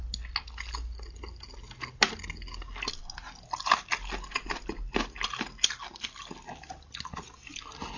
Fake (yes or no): no